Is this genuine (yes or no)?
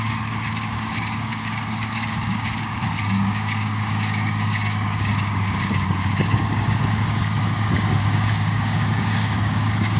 no